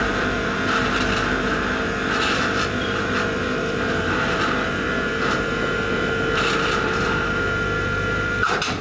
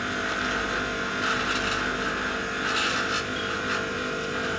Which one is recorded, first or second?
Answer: second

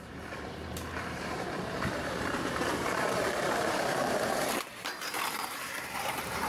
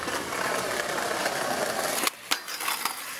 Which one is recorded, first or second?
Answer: second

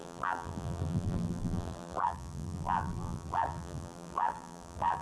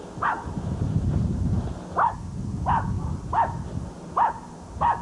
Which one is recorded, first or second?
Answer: second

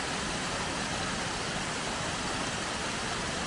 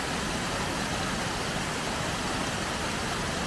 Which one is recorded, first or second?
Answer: second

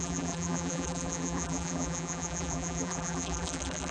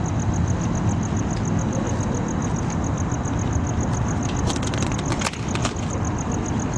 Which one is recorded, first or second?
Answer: second